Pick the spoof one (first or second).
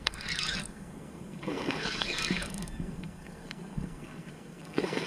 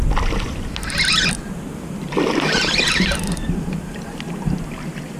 first